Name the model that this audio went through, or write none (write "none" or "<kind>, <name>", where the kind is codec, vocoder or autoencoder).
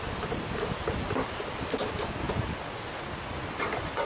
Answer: none